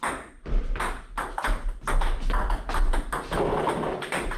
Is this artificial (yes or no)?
no